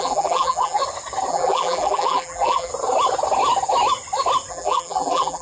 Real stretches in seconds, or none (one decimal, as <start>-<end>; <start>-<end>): 0.8-1.3; 2.7-4.5